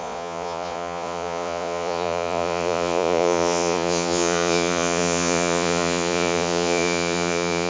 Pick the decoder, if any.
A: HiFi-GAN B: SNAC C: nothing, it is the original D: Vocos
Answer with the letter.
D